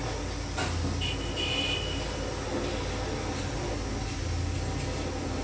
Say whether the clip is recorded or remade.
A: recorded